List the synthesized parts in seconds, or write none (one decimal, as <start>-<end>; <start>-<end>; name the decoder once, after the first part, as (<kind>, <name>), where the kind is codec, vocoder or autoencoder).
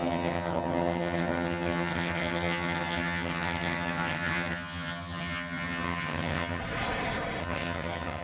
0.0-6.6 (vocoder, HiFi-GAN); 7.4-8.2